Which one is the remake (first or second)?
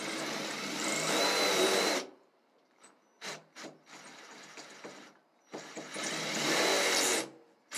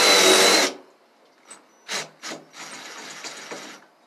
first